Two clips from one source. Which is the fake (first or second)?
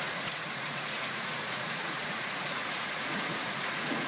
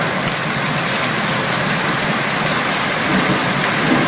first